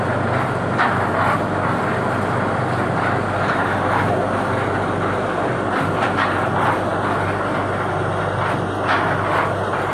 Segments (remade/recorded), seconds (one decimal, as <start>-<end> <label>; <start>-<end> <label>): 0.0-9.9 recorded